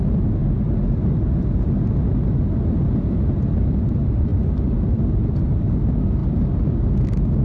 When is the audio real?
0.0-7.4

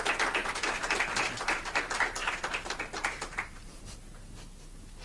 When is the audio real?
0.0-0.4; 1.8-2.2; 3.8-5.0

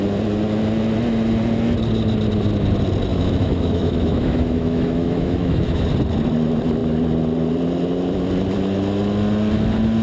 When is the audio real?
0.0-3.1; 5.8-10.0

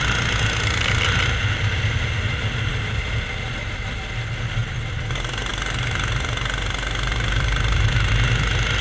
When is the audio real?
0.0-7.1; 8.1-8.8

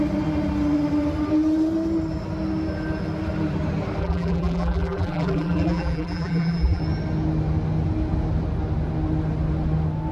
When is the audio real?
0.0-4.0; 6.8-10.1

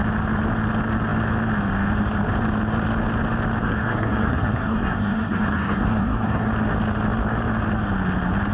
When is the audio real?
0.0-3.6; 6.5-8.5

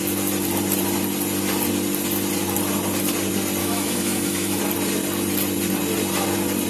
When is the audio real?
0.0-3.6; 4.6-6.7

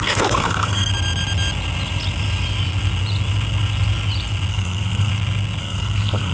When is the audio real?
0.9-4.5; 5.1-5.6